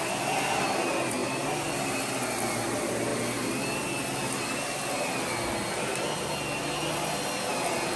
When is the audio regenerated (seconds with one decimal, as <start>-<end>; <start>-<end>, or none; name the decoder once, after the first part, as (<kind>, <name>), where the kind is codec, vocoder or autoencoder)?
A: none